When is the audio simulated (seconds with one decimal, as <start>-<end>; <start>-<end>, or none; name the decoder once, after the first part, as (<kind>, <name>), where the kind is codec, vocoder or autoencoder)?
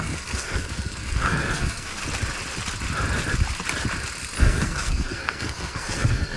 0.0-2.0 (codec, SNAC); 4.4-6.4